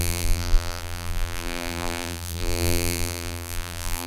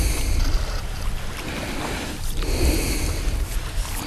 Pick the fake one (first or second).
first